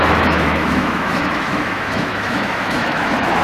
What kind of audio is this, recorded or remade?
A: remade